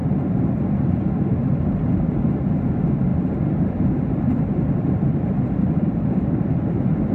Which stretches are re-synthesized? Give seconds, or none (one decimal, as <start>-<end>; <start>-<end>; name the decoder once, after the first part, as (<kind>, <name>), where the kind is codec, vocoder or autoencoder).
0.0-1.6 (vocoder, BigVGAN v2); 3.1-6.4